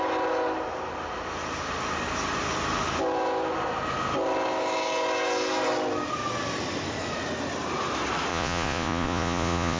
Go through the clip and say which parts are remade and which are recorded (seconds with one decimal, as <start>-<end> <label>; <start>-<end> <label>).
0.0-8.3 recorded; 8.3-9.8 remade